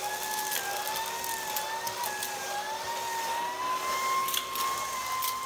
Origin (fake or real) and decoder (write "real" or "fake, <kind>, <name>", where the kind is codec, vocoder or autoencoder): real